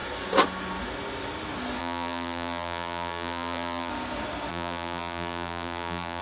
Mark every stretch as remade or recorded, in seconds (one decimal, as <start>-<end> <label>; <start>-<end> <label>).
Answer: 0.0-1.8 recorded; 1.8-3.9 remade; 3.9-4.5 recorded; 4.5-6.2 remade